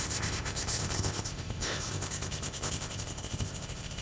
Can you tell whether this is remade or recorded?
remade